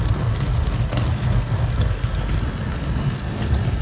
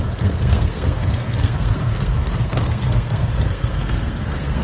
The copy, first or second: second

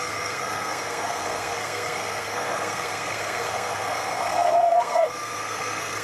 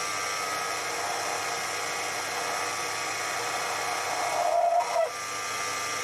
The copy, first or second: first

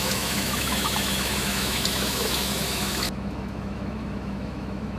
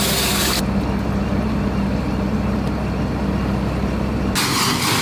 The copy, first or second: first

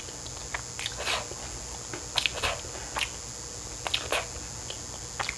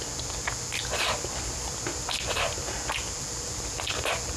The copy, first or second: second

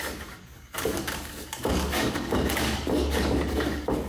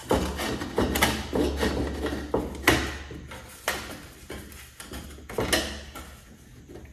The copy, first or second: first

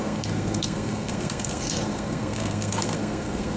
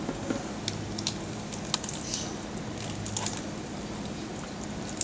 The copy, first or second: first